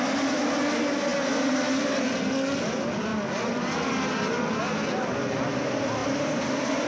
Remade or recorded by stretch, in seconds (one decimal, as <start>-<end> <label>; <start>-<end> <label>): 0.0-6.9 recorded